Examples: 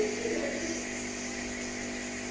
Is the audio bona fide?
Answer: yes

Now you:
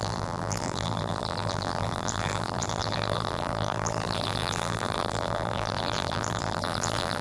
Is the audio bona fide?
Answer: no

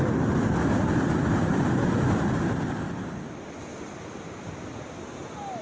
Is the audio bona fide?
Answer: yes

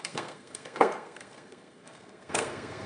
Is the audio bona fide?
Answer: no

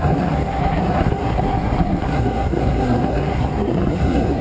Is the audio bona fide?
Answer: no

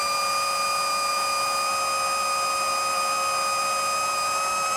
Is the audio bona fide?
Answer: yes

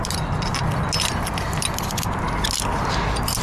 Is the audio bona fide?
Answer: yes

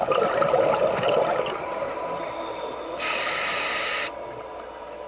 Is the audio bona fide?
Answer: yes